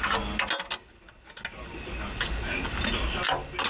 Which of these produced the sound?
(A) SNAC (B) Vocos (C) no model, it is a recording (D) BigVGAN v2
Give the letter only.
C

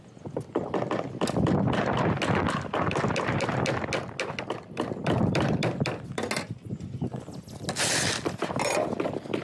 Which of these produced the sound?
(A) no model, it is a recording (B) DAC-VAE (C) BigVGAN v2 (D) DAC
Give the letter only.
A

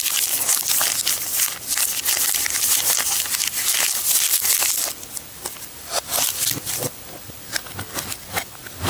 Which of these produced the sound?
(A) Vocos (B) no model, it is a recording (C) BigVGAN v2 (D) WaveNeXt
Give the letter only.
C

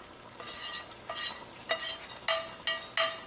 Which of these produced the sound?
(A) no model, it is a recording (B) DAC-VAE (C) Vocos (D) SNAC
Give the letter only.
A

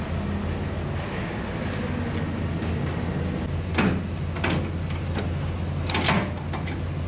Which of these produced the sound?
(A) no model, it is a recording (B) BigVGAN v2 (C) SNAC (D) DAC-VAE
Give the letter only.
A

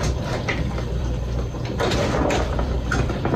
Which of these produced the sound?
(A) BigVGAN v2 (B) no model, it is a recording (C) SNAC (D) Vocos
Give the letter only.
A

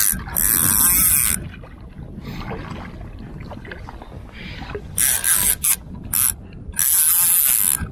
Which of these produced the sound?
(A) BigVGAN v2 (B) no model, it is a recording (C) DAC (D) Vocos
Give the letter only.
B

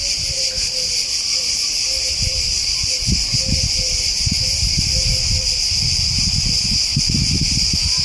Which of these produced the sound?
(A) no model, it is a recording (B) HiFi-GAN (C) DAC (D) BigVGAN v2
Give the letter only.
D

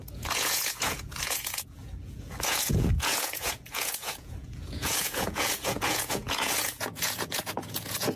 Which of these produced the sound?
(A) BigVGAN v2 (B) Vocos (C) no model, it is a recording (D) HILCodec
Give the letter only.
B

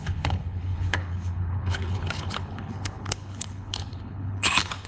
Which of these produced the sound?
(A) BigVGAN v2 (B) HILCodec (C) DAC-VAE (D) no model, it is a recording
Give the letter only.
B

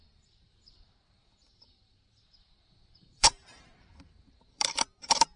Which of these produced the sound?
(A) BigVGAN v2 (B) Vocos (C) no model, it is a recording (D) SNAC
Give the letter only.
A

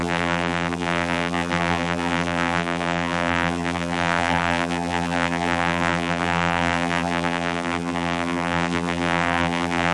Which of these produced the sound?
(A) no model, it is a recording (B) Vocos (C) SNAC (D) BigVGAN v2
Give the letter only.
D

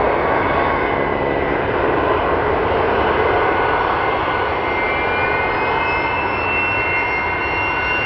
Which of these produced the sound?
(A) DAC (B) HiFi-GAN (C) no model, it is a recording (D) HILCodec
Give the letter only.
C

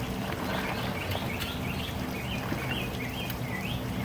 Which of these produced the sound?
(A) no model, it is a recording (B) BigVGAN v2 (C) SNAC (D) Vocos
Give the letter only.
A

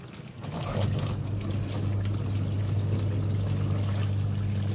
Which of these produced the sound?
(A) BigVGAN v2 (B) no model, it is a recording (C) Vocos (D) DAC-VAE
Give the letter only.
B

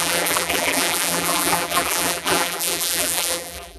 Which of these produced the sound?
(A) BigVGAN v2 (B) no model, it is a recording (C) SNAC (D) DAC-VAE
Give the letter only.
A